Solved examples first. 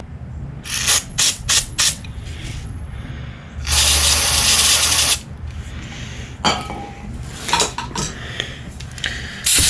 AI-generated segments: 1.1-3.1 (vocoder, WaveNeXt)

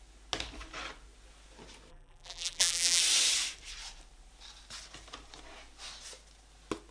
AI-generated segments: 1.9-3.0 (vocoder, BigVGAN v2)